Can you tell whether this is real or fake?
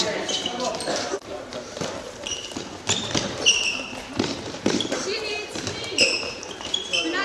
fake